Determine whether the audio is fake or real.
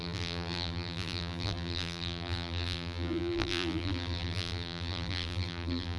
fake